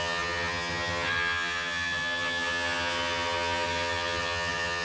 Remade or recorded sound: remade